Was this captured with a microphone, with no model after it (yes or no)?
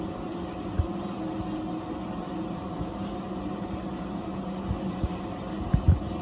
yes